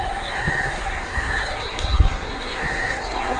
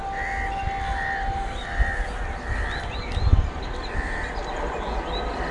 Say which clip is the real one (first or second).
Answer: second